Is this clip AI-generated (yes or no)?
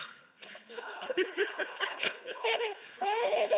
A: yes